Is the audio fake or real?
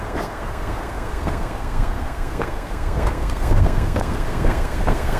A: fake